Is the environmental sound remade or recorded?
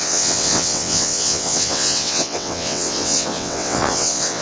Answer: remade